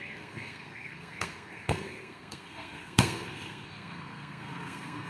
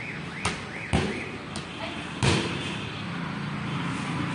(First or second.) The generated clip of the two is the first